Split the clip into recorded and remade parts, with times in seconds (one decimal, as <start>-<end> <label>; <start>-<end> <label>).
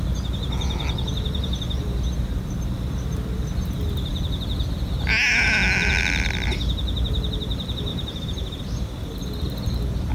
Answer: 0.0-7.9 recorded; 7.9-8.6 remade; 8.6-10.1 recorded